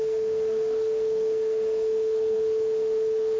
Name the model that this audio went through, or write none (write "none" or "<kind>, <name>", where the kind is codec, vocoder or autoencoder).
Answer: codec, SNAC